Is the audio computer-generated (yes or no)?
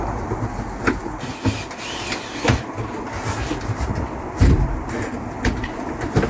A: no